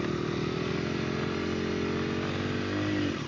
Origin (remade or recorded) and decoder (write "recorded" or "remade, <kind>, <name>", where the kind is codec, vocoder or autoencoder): recorded